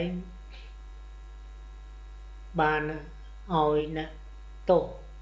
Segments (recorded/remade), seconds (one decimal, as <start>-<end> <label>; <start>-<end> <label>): 0.0-5.2 recorded